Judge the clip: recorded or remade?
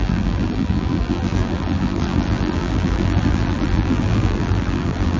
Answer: remade